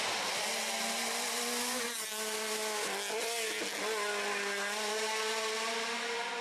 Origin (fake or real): real